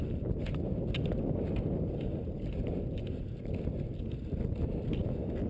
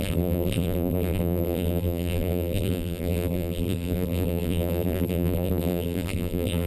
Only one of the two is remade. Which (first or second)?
second